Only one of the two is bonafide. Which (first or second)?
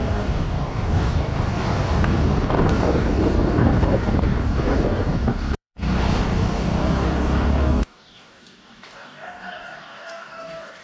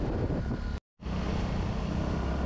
second